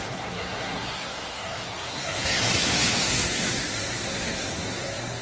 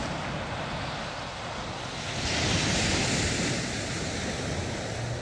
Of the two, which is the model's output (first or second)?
first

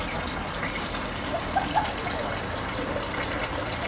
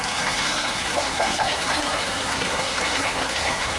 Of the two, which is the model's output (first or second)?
second